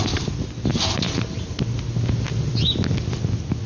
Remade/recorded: recorded